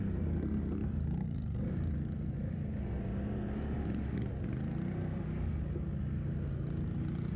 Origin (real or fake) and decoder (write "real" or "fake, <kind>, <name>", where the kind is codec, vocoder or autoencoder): real